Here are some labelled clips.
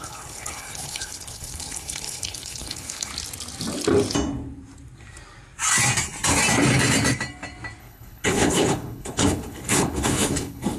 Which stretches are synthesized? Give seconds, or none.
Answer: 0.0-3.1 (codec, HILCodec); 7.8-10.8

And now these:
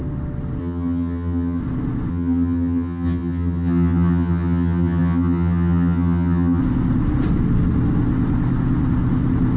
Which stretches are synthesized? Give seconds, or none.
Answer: 0.6-1.6 (vocoder, HiFi-GAN); 2.1-6.6

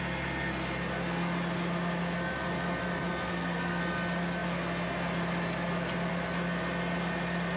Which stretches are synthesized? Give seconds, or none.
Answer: 3.3-3.8 (codec, SNAC)